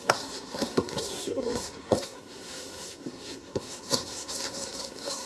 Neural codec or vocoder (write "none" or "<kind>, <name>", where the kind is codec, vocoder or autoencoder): codec, SNAC